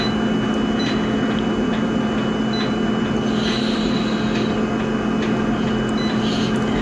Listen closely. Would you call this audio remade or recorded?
recorded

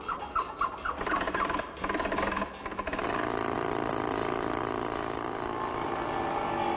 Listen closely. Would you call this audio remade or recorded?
recorded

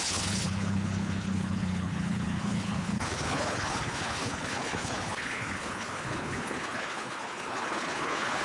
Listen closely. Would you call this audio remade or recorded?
remade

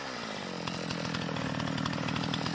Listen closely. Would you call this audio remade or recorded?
recorded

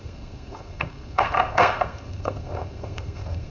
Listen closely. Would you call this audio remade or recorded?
remade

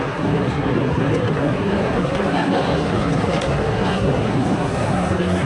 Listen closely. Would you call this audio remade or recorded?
remade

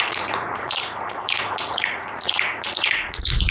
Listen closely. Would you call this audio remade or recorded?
remade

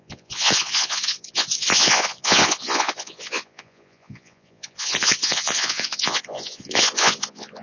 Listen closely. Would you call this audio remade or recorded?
remade